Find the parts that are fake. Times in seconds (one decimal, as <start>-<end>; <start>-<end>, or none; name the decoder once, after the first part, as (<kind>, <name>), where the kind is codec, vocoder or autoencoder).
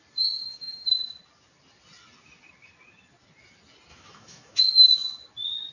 0.5-1.1 (autoencoder, DAC-VAE); 3.9-4.6